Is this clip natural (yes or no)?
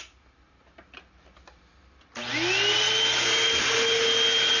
yes